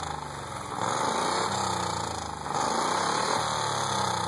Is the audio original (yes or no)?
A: yes